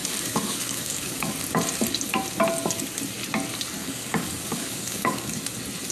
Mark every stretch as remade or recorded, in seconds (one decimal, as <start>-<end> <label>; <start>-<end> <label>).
0.0-1.3 remade; 1.3-3.8 recorded; 3.8-5.4 remade; 5.4-5.9 recorded